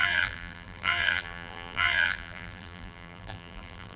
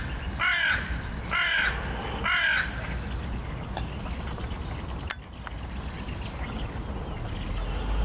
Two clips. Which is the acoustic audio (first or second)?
second